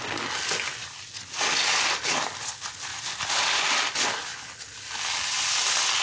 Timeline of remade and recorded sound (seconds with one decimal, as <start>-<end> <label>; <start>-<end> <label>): 0.0-0.8 recorded; 0.8-1.3 remade; 1.3-2.9 recorded; 2.9-3.4 remade; 3.4-6.0 recorded